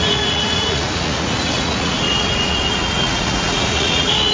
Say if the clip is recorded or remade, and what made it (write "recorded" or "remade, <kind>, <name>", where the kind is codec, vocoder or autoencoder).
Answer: remade, vocoder, Vocos